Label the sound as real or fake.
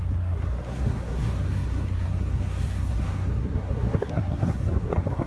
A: fake